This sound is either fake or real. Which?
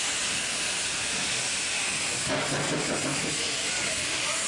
real